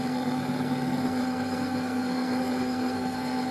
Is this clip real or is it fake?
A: fake